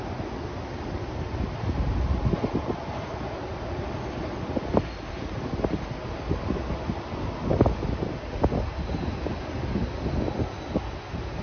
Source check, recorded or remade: recorded